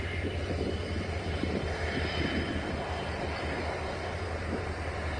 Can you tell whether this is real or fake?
real